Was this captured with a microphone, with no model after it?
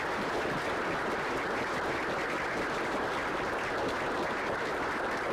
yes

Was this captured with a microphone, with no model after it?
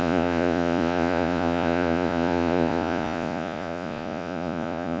no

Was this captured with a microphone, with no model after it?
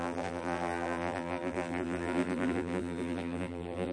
no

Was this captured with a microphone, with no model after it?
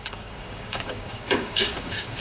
no